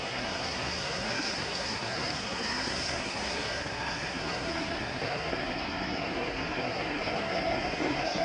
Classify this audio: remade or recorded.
remade